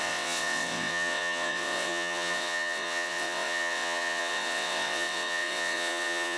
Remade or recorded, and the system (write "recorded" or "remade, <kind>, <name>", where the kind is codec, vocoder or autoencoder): remade, vocoder, WaveNeXt